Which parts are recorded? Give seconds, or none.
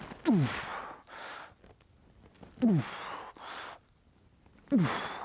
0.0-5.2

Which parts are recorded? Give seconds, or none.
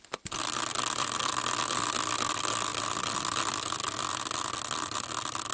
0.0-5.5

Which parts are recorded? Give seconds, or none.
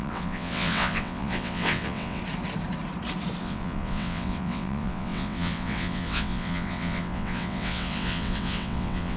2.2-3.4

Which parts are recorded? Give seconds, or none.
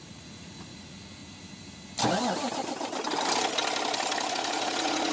1.2-4.3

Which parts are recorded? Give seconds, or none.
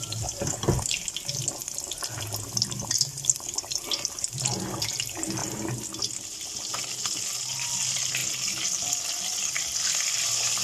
5.4-7.4; 8.2-9.5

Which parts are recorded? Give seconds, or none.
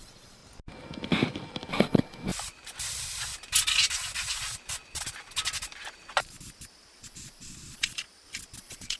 0.4-1.7; 2.3-7.0; 7.9-8.6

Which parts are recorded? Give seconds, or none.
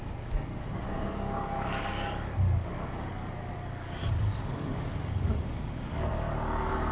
none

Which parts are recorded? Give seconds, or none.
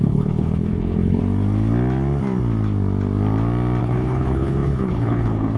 1.2-3.8